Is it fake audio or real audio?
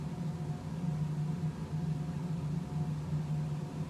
real